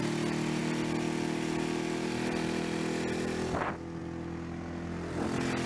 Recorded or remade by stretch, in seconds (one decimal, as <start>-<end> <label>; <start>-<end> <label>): 0.0-5.7 recorded